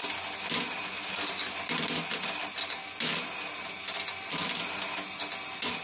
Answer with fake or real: real